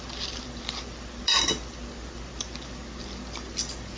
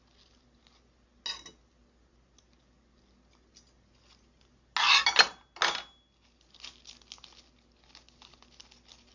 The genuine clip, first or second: second